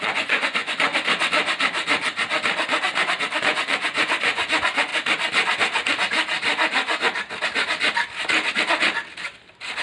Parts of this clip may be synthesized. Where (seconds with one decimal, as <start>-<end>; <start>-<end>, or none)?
0.0-0.9; 3.4-4.9